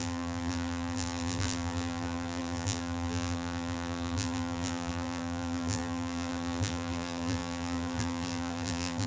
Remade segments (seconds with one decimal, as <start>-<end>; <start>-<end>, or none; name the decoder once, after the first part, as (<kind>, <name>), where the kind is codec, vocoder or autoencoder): 0.0-9.1 (vocoder, BigVGAN v2)